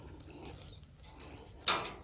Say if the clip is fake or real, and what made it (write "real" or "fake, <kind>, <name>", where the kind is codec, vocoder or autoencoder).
real